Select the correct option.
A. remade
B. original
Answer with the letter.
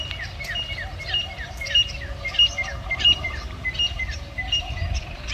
B